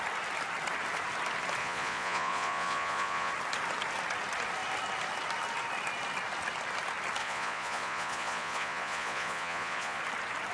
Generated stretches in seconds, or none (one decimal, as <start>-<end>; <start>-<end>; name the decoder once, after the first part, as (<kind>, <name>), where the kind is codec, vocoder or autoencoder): 1.6-3.3 (vocoder, Vocos); 7.2-10.0